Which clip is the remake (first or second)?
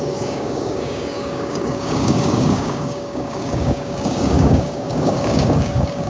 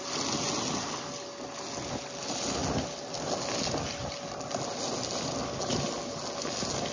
first